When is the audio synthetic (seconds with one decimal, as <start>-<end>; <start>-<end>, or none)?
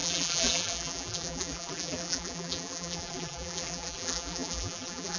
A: 0.0-5.2